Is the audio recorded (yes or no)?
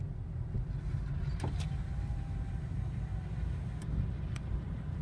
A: yes